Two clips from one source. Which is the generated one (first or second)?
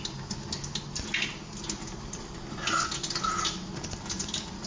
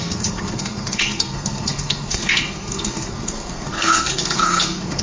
second